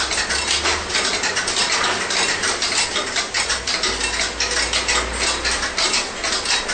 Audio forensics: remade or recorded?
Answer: recorded